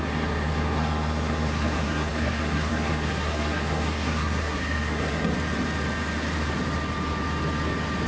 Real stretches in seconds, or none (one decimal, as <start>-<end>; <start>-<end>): 5.3-8.1